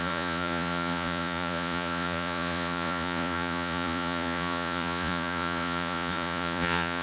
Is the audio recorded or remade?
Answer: remade